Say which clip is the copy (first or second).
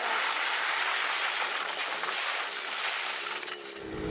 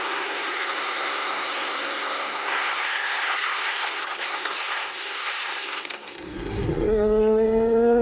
second